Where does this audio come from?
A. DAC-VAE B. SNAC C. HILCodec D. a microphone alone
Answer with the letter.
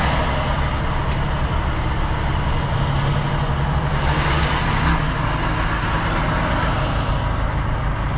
D